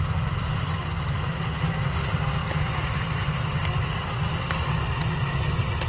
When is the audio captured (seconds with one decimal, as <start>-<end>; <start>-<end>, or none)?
0.0-5.9